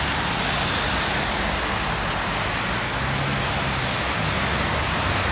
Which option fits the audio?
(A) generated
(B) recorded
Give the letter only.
B